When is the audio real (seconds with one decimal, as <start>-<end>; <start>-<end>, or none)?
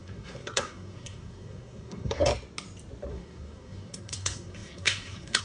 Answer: 2.3-3.1